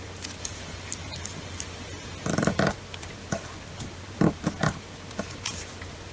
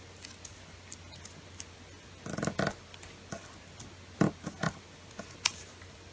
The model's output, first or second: first